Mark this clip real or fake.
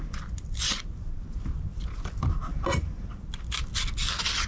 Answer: real